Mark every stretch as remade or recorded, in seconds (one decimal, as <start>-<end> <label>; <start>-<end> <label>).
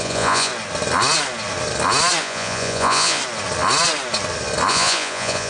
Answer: 0.0-0.5 remade; 0.5-2.2 recorded; 2.2-3.2 remade; 3.2-4.7 recorded; 4.7-5.5 remade